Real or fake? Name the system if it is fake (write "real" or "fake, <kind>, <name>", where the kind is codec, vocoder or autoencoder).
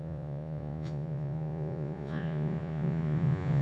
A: fake, vocoder, Vocos